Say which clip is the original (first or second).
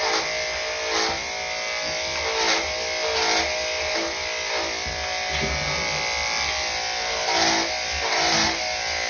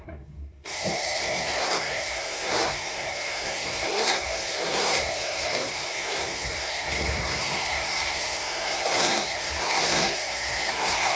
first